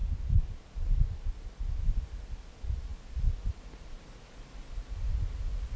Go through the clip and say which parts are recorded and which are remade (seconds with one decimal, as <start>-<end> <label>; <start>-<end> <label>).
0.0-5.8 recorded